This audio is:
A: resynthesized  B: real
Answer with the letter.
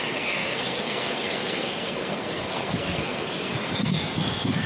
A